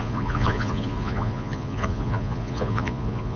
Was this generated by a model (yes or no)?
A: yes